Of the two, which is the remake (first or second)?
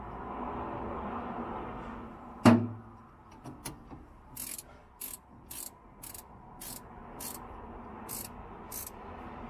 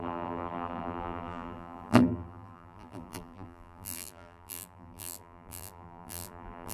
second